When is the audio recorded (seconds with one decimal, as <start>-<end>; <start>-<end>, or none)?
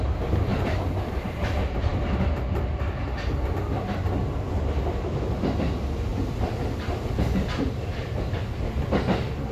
0.0-0.5; 1.5-6.1; 8.2-9.5